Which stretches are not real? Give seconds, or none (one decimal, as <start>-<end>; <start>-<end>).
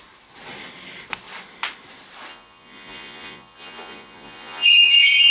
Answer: 2.3-5.3